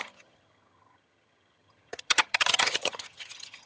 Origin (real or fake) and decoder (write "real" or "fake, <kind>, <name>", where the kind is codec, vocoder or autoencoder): fake, vocoder, HiFi-GAN